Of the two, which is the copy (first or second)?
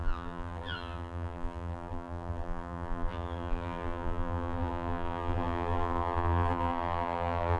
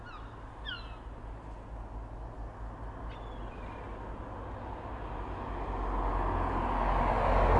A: first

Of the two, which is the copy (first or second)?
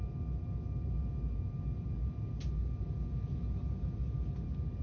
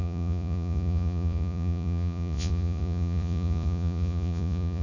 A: second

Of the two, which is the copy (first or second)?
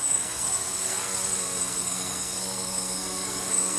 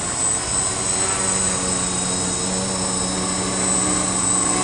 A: first